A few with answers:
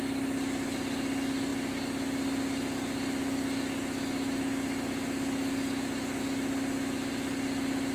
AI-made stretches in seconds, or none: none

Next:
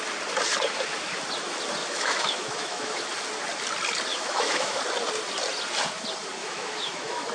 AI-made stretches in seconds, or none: 1.8-3.0 (autoencoder, DAC-VAE); 4.1-4.8; 6.4-7.3

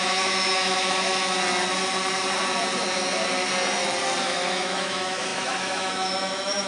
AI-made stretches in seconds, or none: 0.0-1.1 (autoencoder, DAC-VAE); 4.2-6.7

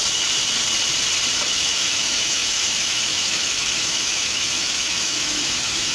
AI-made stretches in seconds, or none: 1.5-5.9 (autoencoder, DAC-VAE)

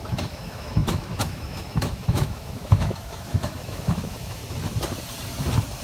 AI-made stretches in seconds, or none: 0.0-4.4 (autoencoder, DAC-VAE)

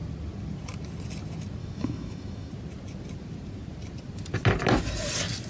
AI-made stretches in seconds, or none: 1.6-2.5 (autoencoder, DAC-VAE)